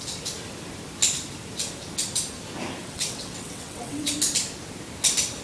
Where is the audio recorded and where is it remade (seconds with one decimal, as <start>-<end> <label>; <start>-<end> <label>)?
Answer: 0.0-2.8 recorded; 2.8-4.1 remade; 4.1-5.4 recorded